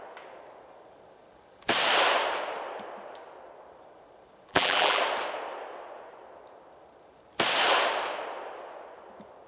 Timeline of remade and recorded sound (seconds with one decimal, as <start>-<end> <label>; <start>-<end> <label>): 0.0-4.5 recorded; 4.5-5.0 remade; 5.0-9.5 recorded